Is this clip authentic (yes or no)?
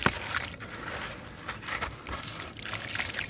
yes